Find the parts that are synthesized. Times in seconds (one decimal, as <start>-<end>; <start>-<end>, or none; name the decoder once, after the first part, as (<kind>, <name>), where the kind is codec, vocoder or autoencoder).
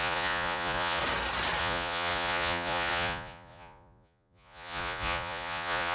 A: 0.0-1.0 (vocoder, Vocos); 1.6-5.9